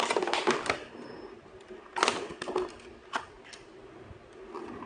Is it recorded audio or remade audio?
recorded